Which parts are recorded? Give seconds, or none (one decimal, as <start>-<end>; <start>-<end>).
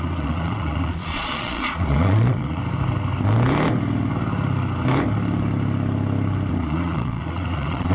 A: 2.6-6.5